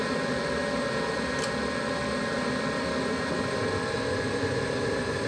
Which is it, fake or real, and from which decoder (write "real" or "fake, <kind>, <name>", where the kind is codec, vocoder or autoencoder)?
real